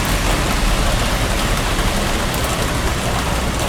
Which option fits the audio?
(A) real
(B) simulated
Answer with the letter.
A